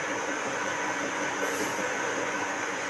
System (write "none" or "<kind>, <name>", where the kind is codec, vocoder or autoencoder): vocoder, Vocos